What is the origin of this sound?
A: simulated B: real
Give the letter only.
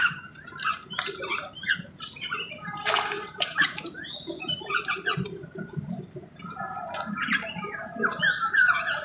A